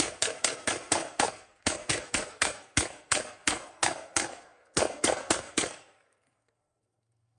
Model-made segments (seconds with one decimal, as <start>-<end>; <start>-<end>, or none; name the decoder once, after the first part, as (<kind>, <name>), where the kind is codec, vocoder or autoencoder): 0.0-7.4 (codec, SNAC)